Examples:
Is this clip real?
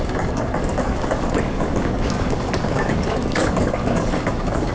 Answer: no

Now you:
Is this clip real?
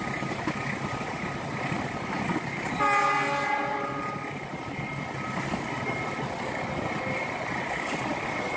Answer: yes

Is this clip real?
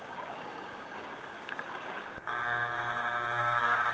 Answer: no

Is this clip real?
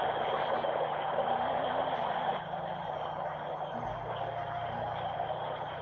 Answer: yes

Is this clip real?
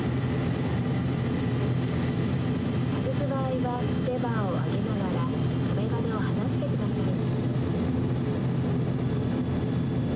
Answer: yes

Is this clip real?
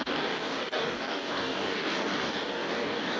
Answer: no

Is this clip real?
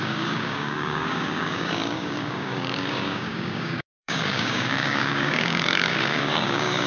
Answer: no